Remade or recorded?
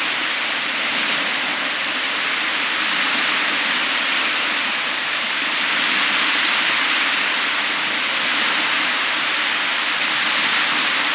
recorded